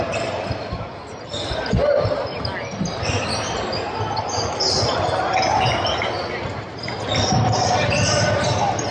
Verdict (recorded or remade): recorded